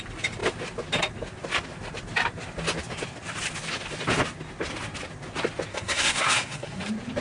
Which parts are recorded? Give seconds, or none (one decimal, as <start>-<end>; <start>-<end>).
0.0-5.7; 6.8-7.2